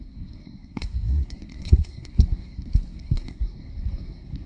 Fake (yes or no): yes